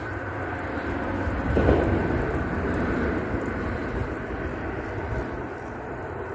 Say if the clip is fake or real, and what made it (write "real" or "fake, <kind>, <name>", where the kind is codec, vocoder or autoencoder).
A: real